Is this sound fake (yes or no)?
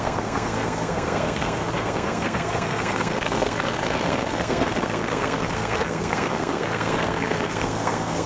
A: yes